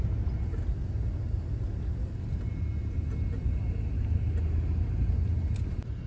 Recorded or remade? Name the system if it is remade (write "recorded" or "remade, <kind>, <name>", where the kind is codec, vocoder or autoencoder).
recorded